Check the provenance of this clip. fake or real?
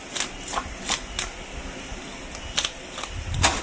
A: real